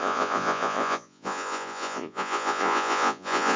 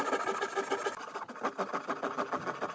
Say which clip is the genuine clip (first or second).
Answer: second